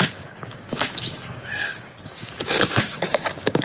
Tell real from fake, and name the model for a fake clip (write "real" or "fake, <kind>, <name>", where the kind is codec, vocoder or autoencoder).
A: fake, codec, DAC